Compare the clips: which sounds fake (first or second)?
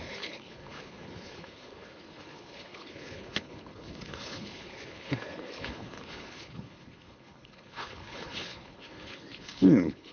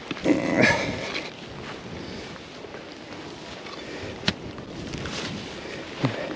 first